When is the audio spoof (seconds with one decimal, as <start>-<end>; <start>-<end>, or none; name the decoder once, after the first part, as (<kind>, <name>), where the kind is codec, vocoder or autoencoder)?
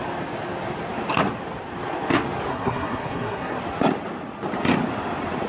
2.5-3.6 (codec, SNAC)